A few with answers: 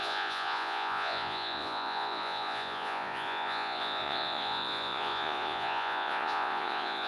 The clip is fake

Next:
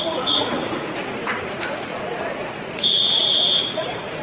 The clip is fake